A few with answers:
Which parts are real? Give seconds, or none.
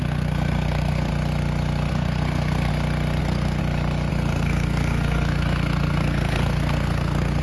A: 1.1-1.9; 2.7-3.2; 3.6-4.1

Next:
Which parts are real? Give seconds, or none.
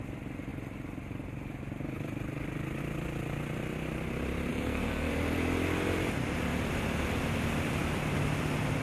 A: 0.0-4.5; 5.1-8.8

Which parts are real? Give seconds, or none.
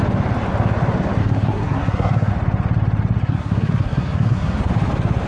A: 0.0-1.2; 2.3-3.2; 4.7-5.3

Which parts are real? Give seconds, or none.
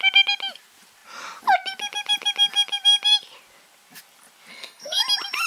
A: 0.0-4.5; 5.0-5.5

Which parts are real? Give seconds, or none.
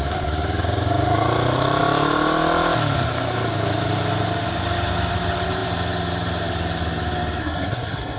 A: 0.0-7.4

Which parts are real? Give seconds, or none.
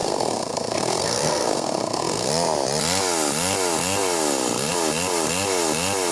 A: 2.3-6.1